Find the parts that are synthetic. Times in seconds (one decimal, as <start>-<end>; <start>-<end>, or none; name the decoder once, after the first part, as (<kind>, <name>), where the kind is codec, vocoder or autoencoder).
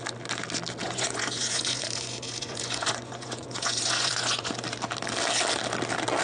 0.8-4.5 (vocoder, Vocos)